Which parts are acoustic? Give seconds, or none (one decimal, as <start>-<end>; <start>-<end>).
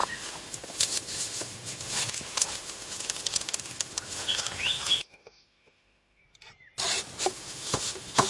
6.2-7.2